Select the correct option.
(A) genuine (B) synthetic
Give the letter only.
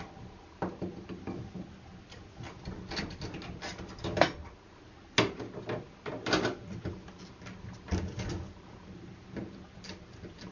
A